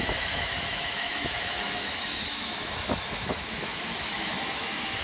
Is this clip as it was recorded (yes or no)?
no